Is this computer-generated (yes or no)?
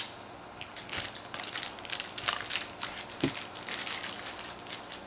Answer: no